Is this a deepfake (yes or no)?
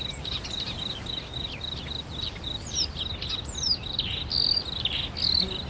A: no